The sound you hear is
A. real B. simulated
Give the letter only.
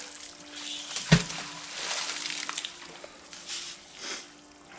A